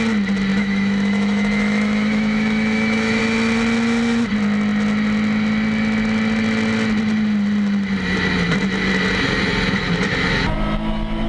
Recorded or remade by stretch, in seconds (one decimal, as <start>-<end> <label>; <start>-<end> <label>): 0.0-0.5 recorded; 0.5-3.2 remade; 3.2-11.3 recorded